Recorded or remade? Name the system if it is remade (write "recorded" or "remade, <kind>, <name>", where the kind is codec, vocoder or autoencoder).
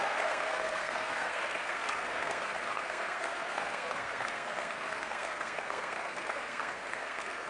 remade, codec, SNAC